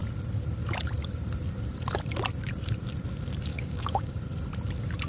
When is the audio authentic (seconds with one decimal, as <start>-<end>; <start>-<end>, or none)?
0.0-3.5; 4.2-5.1